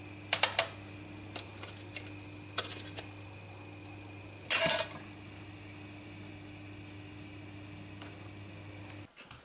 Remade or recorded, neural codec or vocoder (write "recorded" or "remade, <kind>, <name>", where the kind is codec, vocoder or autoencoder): recorded